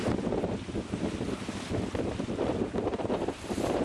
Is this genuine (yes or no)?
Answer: yes